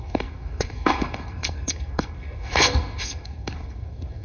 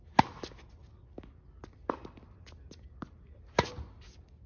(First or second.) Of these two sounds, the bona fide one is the second